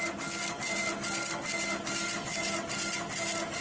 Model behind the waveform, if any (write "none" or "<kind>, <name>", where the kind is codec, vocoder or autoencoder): none